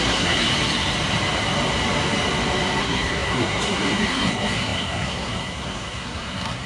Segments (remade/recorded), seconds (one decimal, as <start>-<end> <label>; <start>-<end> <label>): 0.0-0.5 remade; 0.5-2.8 recorded; 2.8-6.7 remade

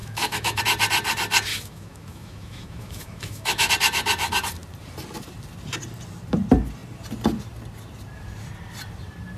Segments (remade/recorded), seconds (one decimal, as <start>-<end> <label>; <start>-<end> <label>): 0.0-0.6 remade; 0.6-1.5 recorded; 1.5-3.7 remade; 3.7-9.4 recorded

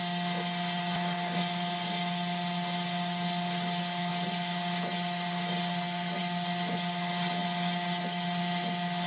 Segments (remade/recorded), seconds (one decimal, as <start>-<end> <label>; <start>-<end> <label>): 0.0-9.1 recorded

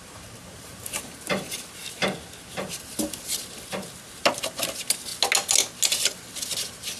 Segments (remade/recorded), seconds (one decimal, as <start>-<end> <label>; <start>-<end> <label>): 0.0-0.4 recorded; 0.4-1.8 remade; 1.8-7.0 recorded

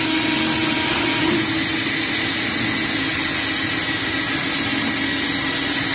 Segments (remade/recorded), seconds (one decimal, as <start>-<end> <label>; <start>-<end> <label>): 0.0-5.9 recorded

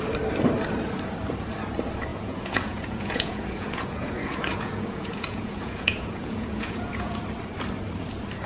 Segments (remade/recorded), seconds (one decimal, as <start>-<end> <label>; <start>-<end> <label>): 0.0-2.1 recorded; 2.1-7.2 remade; 7.2-8.5 recorded

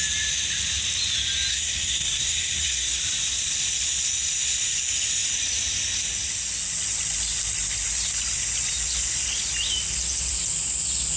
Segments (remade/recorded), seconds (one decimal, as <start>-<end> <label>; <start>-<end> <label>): 0.0-1.5 recorded; 1.5-3.0 remade; 3.0-11.2 recorded